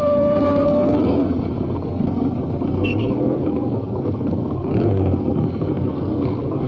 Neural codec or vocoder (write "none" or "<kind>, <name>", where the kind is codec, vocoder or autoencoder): codec, SNAC